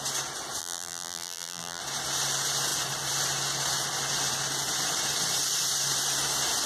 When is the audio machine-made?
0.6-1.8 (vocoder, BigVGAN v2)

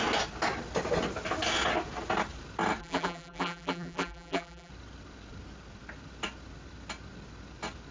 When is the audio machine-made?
2.8-4.7 (vocoder, BigVGAN v2)